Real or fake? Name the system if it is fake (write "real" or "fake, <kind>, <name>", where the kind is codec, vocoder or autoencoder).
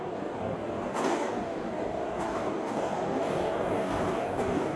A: fake, codec, DAC